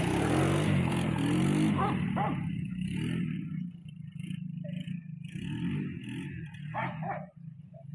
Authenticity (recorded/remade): recorded